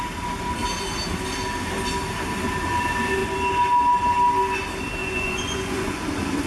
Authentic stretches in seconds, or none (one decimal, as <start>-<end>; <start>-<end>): 0.0-5.0; 6.0-6.5